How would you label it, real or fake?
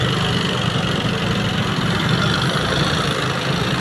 fake